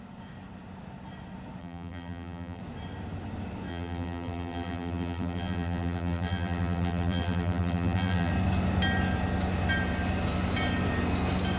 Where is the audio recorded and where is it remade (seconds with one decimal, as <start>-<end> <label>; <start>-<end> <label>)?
0.0-1.6 recorded; 1.6-2.6 remade; 2.6-3.7 recorded; 3.7-8.3 remade; 8.3-11.6 recorded